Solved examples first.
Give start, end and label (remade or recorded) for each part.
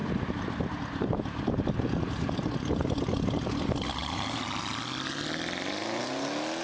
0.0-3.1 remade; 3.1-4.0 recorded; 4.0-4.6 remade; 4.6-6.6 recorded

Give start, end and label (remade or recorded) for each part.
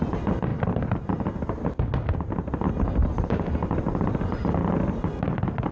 0.0-0.5 recorded; 0.5-1.1 remade; 1.1-3.0 recorded; 3.0-4.1 remade; 4.1-5.7 recorded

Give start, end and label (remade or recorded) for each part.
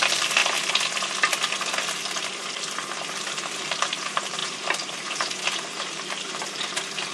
0.0-0.4 remade; 0.4-3.6 recorded; 3.6-7.1 remade